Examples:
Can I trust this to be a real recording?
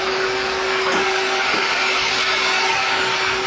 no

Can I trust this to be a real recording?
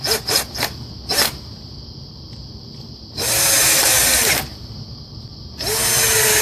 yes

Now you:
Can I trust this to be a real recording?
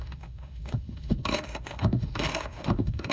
no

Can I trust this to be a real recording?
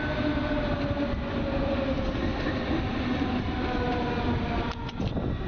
yes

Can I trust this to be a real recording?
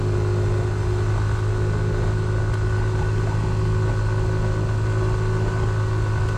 yes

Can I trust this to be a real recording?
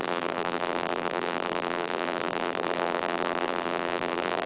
no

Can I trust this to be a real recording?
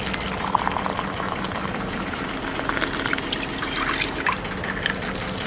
yes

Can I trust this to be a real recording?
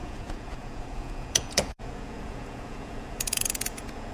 no